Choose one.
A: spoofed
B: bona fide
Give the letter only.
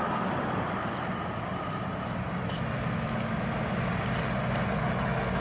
B